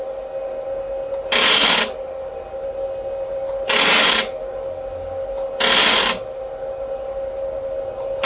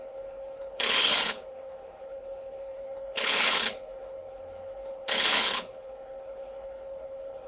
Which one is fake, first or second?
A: second